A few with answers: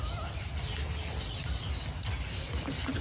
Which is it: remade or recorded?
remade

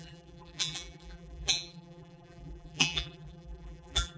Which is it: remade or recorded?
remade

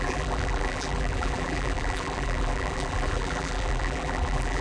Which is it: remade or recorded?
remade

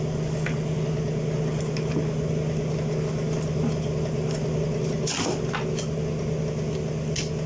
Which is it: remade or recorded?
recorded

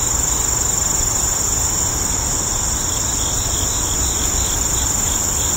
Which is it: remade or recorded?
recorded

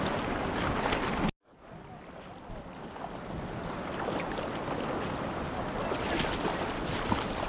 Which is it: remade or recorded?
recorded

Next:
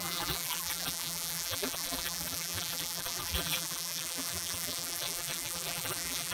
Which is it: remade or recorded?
remade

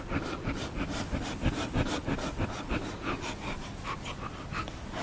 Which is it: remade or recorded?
recorded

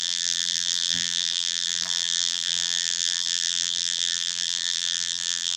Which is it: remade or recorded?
remade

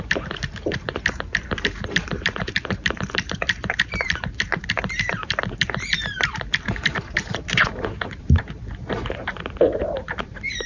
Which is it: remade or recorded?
remade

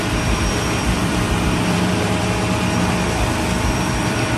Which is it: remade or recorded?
remade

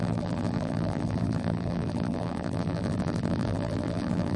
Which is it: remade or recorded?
remade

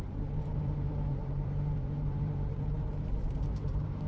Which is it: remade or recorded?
remade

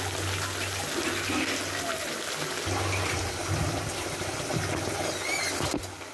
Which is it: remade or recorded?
recorded